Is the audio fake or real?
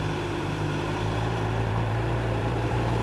fake